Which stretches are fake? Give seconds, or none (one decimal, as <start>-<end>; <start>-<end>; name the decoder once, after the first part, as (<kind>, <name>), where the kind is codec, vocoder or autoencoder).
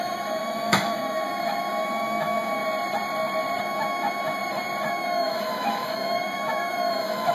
0.0-2.6 (autoencoder, DAC-VAE); 3.6-4.4; 4.9-7.3